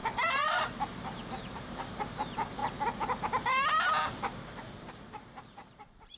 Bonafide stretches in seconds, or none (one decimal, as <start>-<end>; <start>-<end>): 2.6-3.9